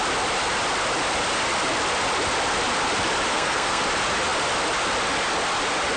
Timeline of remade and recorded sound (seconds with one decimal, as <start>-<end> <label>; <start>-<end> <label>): 0.0-3.3 recorded; 3.3-3.8 remade; 3.8-6.0 recorded